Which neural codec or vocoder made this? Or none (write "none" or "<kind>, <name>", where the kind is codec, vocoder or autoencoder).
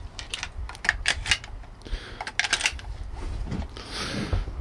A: none